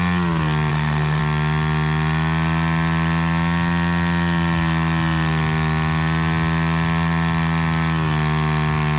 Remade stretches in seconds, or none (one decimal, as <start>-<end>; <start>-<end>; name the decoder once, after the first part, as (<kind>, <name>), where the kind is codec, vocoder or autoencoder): 0.7-1.2 (codec, SNAC)